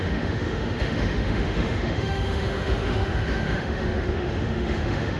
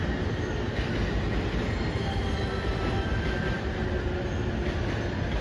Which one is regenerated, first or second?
first